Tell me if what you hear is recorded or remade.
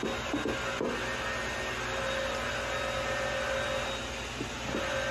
recorded